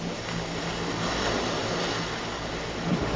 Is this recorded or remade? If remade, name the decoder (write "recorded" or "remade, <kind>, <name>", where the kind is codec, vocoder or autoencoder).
recorded